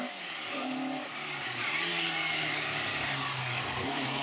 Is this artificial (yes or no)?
yes